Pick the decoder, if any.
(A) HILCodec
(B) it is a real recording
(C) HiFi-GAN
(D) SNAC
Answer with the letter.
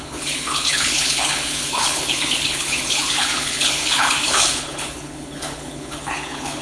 A